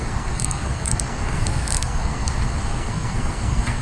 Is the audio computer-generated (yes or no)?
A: yes